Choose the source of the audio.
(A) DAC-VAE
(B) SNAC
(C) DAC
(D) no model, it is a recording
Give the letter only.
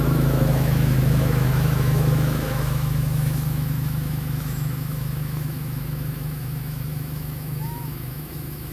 A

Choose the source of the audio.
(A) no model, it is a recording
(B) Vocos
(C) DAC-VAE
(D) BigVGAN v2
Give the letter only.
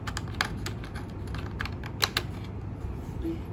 A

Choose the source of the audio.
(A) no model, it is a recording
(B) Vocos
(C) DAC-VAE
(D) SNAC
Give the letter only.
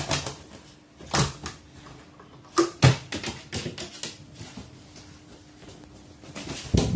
A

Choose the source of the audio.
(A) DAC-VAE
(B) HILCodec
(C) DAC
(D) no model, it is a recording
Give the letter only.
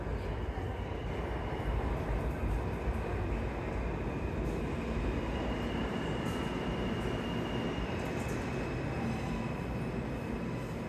D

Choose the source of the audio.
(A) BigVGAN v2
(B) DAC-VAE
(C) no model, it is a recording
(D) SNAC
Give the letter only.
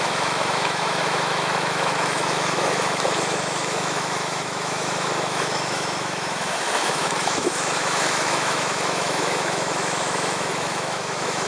B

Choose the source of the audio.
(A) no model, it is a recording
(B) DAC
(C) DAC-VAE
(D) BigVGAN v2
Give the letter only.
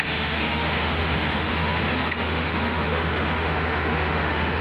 C